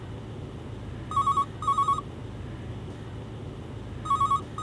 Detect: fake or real real